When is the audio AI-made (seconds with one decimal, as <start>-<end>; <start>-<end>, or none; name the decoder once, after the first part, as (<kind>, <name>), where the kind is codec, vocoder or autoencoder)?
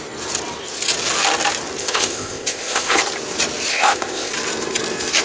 1.8-3.0 (codec, ZipCodec); 3.7-4.3